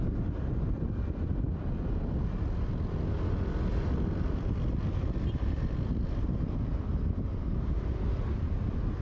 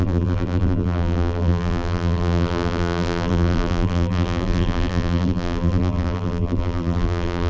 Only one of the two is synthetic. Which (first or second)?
second